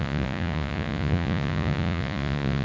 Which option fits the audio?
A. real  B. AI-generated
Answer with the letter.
B